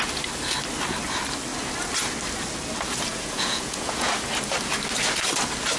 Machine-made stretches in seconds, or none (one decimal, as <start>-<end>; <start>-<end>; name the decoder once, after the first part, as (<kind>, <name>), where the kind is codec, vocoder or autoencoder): 3.1-4.1 (vocoder, Vocos)